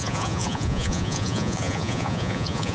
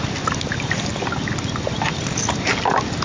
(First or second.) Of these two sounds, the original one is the second